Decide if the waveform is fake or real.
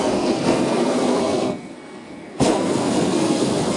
fake